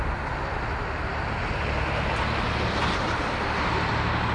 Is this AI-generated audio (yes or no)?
no